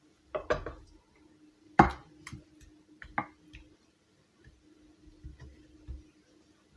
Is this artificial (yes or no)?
no